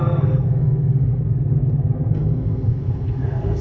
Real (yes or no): no